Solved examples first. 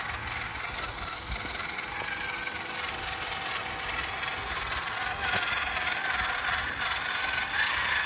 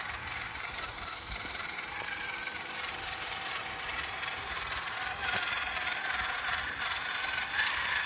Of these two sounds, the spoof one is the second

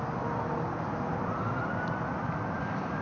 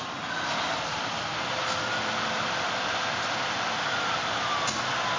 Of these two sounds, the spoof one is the first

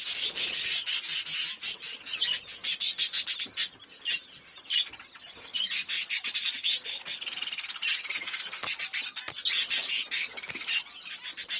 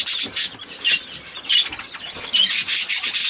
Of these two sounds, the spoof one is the second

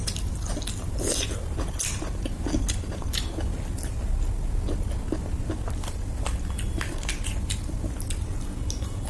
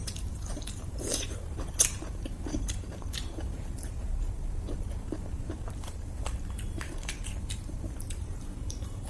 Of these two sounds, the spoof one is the second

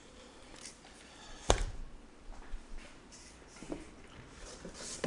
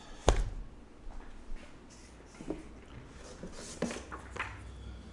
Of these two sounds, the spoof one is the first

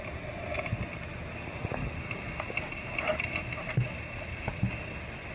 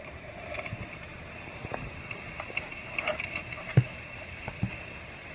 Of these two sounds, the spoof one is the second